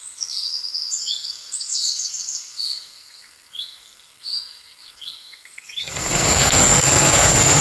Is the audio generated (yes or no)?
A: yes